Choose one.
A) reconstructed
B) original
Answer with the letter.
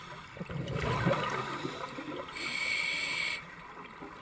B